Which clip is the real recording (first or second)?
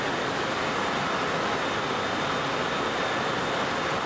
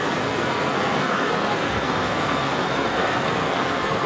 first